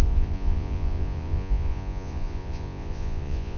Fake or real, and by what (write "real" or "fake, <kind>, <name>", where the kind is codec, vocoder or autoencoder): fake, vocoder, Vocos